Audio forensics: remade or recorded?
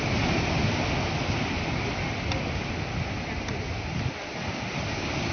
recorded